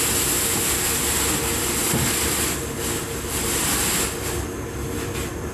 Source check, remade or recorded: recorded